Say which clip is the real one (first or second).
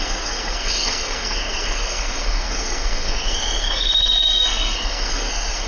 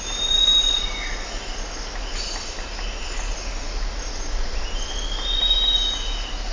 second